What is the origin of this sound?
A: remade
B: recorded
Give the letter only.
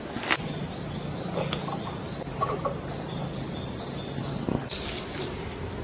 B